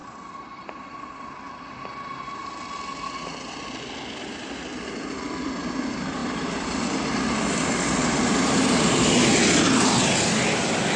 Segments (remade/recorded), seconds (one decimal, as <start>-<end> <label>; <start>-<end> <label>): 0.0-1.1 remade; 1.1-6.2 recorded; 6.2-9.3 remade; 9.3-11.0 recorded